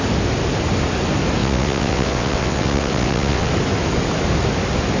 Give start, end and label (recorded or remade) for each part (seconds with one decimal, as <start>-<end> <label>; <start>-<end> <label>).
0.0-1.4 recorded; 1.4-3.5 remade; 3.5-5.0 recorded